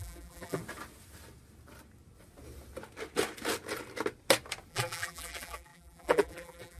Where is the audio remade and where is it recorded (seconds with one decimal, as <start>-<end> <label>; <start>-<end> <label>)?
0.0-0.6 remade; 0.6-4.7 recorded; 4.7-6.8 remade

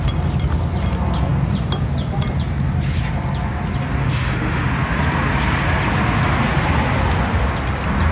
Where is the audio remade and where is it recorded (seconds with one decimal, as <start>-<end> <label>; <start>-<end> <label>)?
0.0-4.0 recorded; 4.0-4.7 remade; 4.7-8.1 recorded

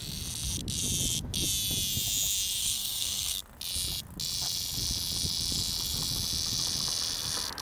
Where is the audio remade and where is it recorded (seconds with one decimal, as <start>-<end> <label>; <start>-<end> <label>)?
0.0-2.6 recorded; 2.6-3.4 remade; 3.4-7.6 recorded